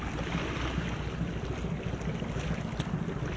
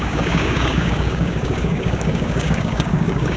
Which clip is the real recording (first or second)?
first